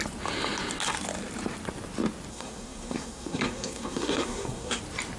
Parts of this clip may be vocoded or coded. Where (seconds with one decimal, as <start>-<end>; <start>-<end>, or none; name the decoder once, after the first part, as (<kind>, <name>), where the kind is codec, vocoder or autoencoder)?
2.3-4.8 (codec, SNAC)